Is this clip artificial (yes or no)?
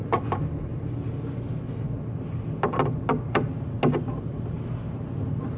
no